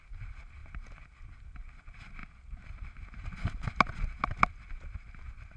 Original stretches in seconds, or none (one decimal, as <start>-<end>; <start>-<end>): 0.0-5.6